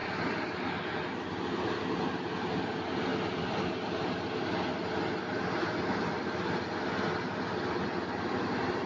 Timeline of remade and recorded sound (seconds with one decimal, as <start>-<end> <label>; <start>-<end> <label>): 0.0-8.9 recorded